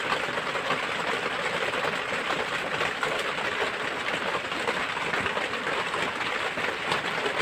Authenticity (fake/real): real